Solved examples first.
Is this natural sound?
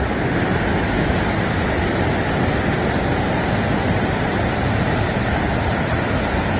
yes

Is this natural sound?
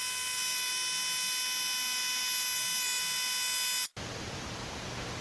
yes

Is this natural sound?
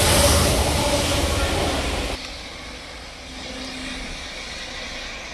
yes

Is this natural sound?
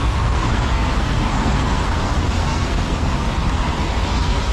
no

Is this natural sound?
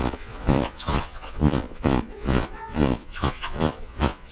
no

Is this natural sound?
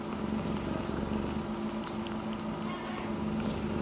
yes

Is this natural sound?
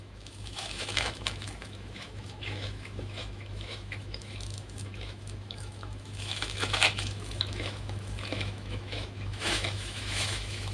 no